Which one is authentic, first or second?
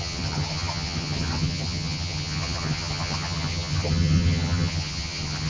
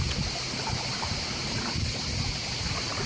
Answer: second